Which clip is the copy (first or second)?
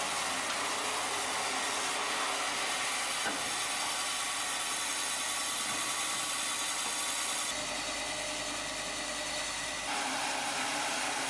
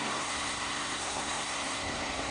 second